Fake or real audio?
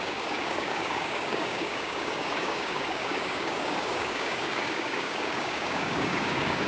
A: fake